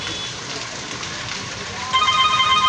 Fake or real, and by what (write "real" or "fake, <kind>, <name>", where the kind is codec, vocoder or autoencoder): real